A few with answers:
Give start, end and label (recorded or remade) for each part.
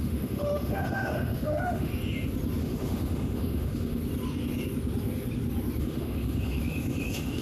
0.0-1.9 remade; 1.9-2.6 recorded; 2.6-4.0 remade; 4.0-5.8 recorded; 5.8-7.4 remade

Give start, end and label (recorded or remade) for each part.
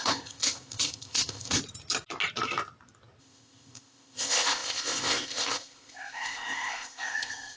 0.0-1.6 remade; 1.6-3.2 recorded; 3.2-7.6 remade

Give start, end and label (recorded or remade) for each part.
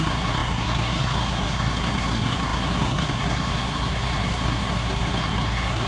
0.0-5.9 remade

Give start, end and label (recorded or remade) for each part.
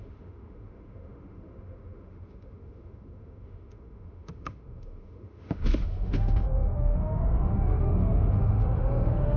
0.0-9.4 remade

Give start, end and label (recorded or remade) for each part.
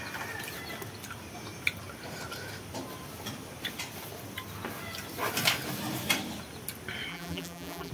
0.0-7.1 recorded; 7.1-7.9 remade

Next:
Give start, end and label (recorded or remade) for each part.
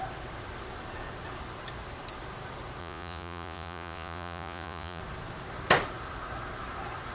0.0-2.8 recorded; 2.8-5.0 remade; 5.0-7.1 recorded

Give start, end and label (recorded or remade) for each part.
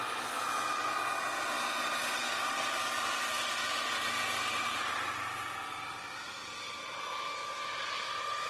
0.0-8.5 recorded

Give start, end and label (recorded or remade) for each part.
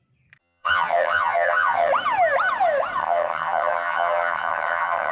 0.0-0.4 recorded; 0.4-1.9 remade; 1.9-3.0 recorded; 3.0-5.1 remade